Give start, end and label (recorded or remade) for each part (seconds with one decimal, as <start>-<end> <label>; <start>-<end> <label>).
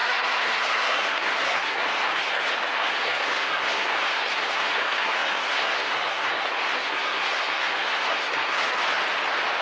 0.0-8.8 remade; 8.8-9.6 recorded